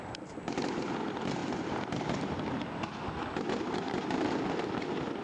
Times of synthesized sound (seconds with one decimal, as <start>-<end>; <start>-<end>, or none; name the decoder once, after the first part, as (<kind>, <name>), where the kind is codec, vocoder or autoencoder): 0.0-5.2 (vocoder, BigVGAN v2)